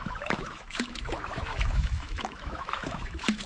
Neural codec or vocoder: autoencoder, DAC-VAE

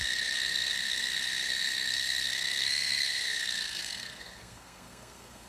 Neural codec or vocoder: codec, SNAC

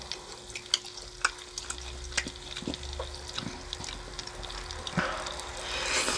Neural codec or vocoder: none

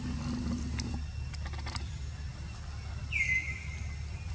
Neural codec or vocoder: none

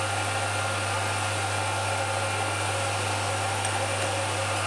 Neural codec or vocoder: none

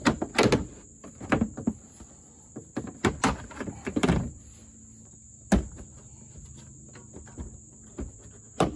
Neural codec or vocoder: none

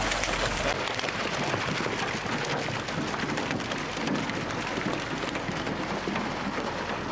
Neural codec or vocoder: none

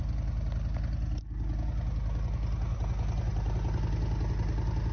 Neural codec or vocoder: none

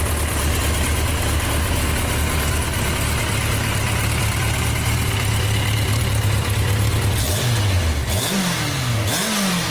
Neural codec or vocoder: none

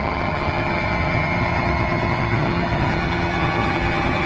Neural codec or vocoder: vocoder, HiFi-GAN